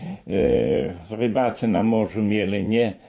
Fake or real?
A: fake